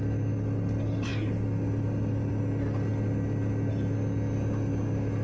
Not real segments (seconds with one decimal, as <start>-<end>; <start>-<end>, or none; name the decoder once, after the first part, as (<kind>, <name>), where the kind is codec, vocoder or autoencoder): none

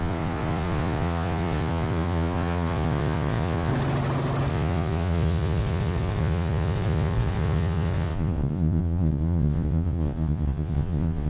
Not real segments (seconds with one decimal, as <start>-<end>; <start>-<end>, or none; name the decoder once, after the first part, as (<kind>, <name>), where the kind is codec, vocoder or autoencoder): 0.0-3.7 (vocoder, Vocos); 4.5-11.3

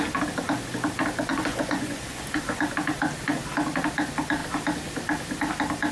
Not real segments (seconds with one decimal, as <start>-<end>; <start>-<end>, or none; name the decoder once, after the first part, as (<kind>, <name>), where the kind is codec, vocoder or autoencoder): 1.3-2.2 (vocoder, Vocos)

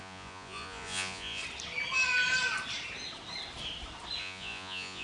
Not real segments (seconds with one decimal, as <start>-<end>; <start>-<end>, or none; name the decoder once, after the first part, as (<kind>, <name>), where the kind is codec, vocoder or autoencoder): 0.0-1.4 (vocoder, Vocos); 4.2-5.0

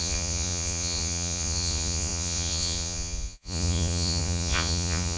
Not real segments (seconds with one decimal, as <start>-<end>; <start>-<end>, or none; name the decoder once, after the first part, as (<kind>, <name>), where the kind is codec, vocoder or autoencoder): 0.0-5.2 (vocoder, Vocos)